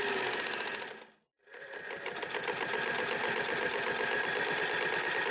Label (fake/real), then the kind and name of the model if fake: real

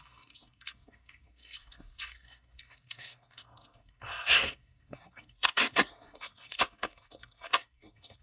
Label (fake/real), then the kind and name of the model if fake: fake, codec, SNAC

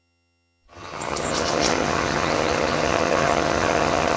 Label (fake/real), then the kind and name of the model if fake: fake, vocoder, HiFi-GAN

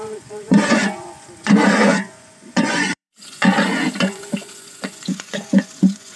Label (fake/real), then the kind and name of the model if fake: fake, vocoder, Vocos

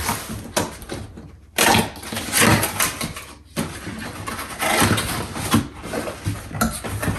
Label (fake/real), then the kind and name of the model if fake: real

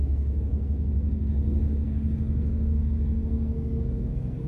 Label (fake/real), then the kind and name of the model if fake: fake, codec, SNAC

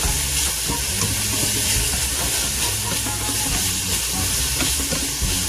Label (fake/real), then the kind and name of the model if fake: real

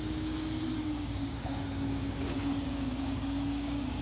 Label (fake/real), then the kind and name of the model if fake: fake, codec, DAC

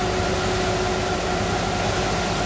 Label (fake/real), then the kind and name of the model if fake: real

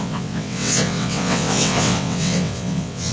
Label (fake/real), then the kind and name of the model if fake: fake, vocoder, WaveNeXt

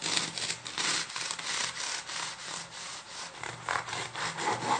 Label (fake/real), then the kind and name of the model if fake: real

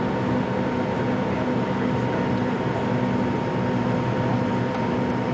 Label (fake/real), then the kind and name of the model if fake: real